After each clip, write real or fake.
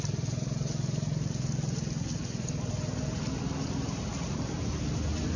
real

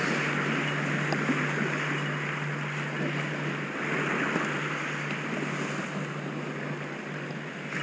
real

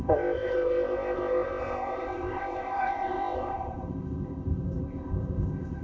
fake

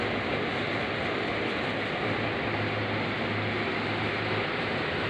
real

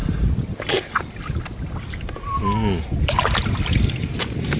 real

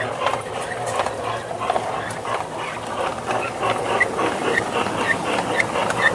real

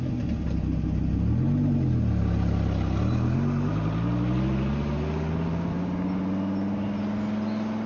real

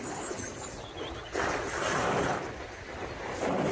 real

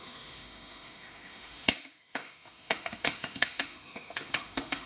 fake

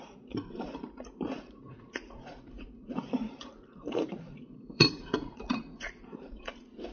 fake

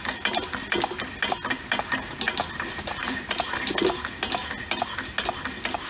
real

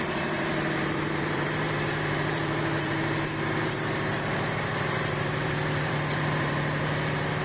fake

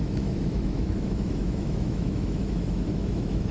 fake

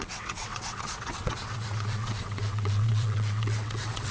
fake